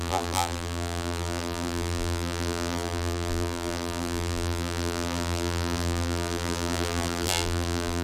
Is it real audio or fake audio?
fake